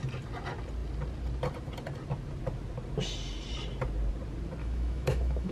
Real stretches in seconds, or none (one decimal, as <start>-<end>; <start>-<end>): 0.0-4.6